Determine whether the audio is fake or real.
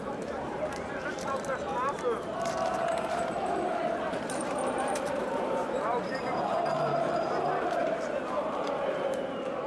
fake